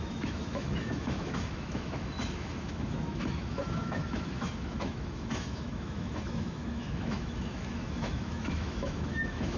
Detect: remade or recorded remade